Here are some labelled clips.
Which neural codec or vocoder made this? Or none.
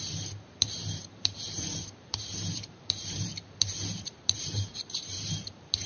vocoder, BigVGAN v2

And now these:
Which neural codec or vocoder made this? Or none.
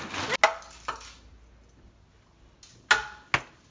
none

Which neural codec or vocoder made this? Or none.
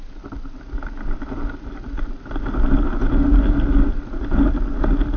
none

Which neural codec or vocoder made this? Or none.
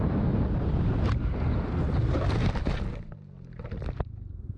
none